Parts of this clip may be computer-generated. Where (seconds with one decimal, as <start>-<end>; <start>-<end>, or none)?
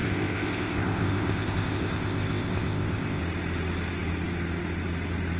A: 0.0-3.2